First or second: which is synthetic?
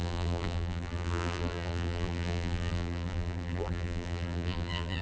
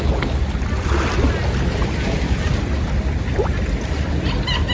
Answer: first